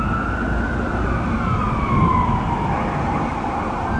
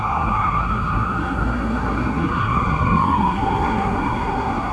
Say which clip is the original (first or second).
first